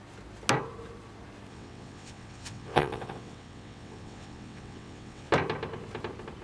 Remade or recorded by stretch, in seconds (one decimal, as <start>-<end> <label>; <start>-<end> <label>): 0.0-1.5 recorded; 1.5-5.3 remade; 5.3-6.4 recorded